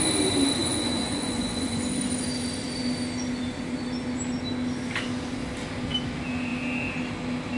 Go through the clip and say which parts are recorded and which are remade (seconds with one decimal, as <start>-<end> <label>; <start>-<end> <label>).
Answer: 0.0-0.6 recorded; 0.6-1.8 remade; 1.8-7.6 recorded